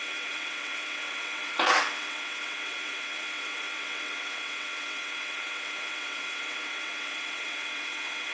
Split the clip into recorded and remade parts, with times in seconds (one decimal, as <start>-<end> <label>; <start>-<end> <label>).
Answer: 0.0-8.3 remade